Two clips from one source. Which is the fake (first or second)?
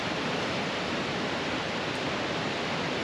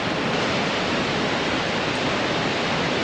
first